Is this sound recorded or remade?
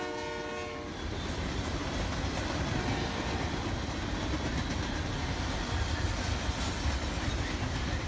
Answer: recorded